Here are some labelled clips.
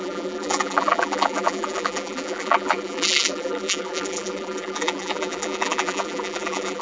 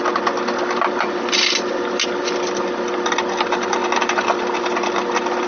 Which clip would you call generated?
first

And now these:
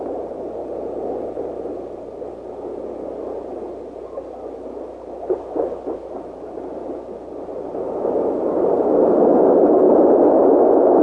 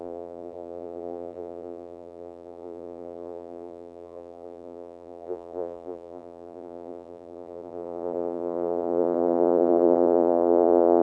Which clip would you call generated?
second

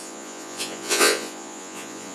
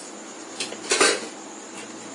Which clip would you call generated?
first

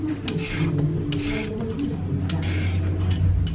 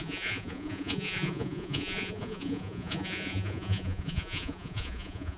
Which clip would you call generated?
second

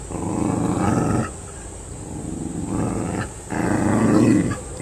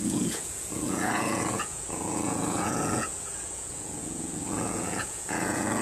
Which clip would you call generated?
second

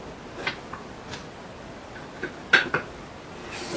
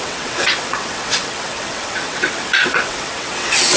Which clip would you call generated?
second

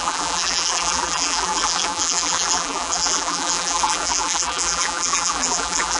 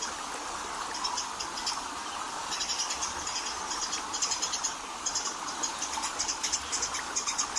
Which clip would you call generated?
first